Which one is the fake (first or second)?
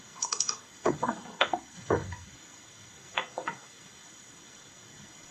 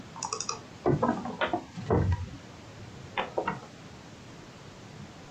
first